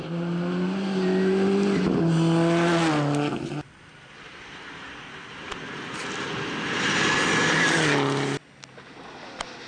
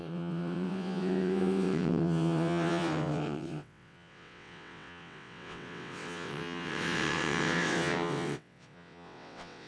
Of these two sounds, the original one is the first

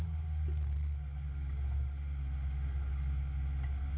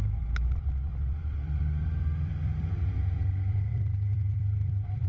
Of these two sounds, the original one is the first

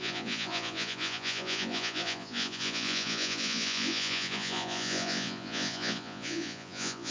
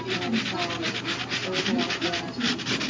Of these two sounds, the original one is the second